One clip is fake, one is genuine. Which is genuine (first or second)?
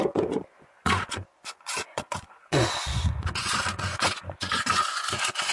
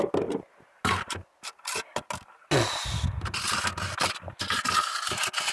second